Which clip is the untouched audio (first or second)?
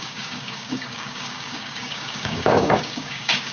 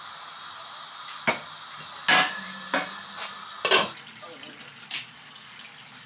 second